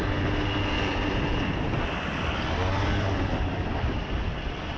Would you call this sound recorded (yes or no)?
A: no